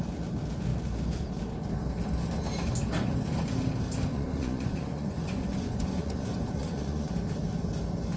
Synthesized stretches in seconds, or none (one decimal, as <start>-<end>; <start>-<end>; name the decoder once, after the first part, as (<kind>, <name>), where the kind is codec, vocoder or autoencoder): 4.1-7.1 (vocoder, Vocos)